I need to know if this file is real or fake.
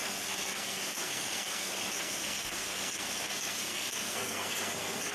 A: fake